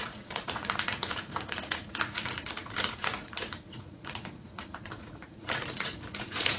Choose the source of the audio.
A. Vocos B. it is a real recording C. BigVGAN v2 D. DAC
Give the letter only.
A